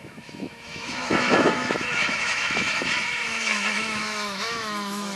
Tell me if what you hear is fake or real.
fake